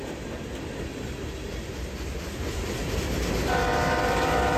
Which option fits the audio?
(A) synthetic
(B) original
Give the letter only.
B